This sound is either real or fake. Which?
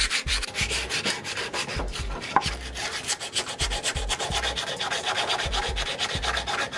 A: real